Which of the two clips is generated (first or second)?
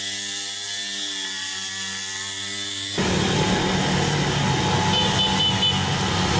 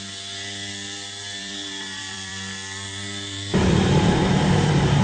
second